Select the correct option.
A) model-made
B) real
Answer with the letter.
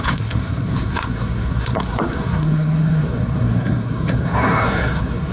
A